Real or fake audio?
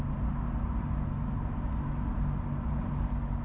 real